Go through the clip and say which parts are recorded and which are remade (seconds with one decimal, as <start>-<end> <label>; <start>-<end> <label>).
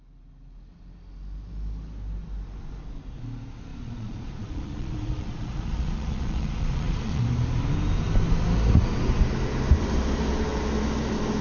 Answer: 0.0-3.7 recorded; 3.7-7.2 remade; 7.2-11.4 recorded